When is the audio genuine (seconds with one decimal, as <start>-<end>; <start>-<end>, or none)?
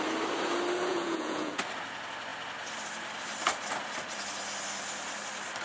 0.0-0.9; 1.6-5.6